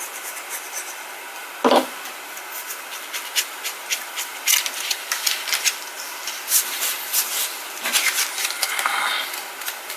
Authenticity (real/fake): real